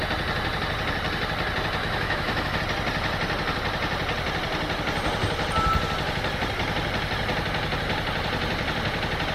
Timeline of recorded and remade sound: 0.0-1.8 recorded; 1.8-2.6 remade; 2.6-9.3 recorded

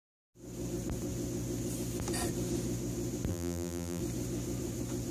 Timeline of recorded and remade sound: 0.0-3.3 recorded; 3.3-4.0 remade; 4.0-5.1 recorded

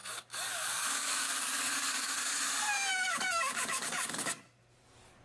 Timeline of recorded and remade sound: 0.0-2.4 remade; 2.4-2.9 recorded; 2.9-4.4 remade; 4.4-5.2 recorded

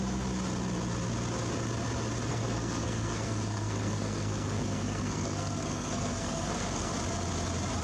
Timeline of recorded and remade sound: 0.0-2.3 recorded; 2.3-6.9 remade; 6.9-7.8 recorded

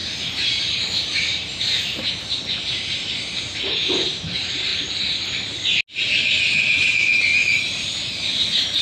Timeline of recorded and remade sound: 0.0-4.7 remade; 4.7-7.6 recorded; 7.6-8.8 remade

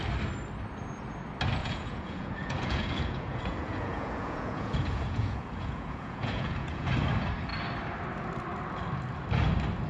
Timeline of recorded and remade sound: 0.0-1.6 recorded; 1.6-6.9 remade; 6.9-9.9 recorded

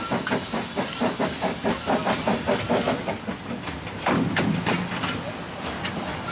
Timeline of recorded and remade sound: 0.0-6.3 recorded